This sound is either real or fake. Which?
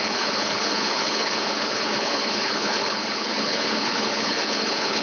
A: fake